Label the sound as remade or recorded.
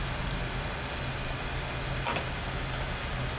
recorded